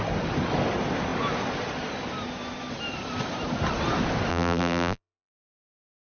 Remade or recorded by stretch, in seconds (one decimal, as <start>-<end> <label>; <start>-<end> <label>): 0.0-4.3 recorded; 4.3-6.1 remade